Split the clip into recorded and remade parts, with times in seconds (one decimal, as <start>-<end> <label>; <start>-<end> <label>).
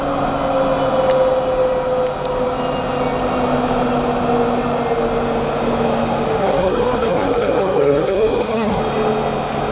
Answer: 0.0-6.4 recorded; 6.4-8.8 remade; 8.8-9.7 recorded